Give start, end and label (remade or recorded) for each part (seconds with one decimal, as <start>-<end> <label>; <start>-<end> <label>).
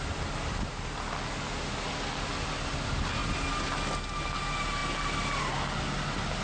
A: 0.0-6.4 recorded